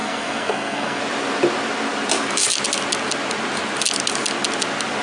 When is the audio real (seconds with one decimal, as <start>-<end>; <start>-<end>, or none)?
1.0-5.0